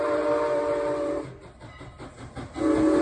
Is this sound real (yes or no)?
yes